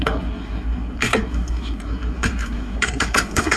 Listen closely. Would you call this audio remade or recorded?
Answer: remade